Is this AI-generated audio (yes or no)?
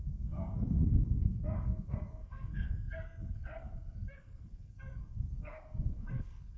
yes